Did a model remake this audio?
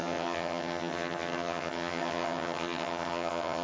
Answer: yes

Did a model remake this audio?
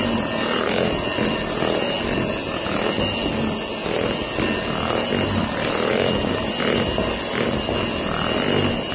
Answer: no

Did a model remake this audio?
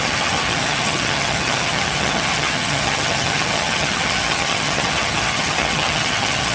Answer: yes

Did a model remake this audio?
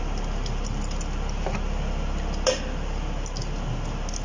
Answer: no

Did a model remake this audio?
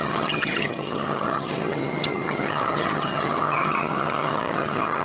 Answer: yes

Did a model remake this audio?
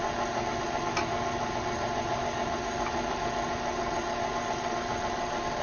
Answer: no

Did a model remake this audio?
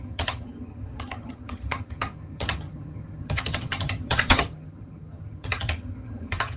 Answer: yes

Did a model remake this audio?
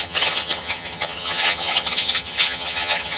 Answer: yes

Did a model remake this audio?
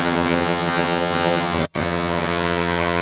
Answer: yes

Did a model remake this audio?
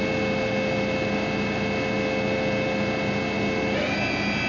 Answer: no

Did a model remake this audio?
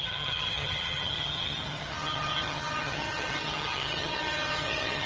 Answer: yes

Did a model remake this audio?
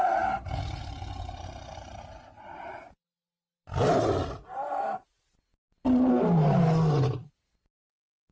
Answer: no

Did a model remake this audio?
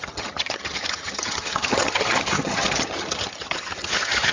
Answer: yes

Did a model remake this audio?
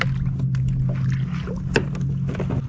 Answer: no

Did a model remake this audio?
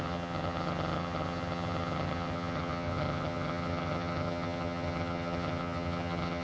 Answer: yes